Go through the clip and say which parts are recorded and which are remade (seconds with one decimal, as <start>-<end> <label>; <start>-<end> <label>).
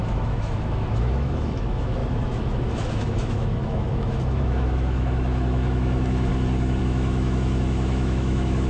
0.0-6.3 remade; 6.3-6.8 recorded; 6.8-8.7 remade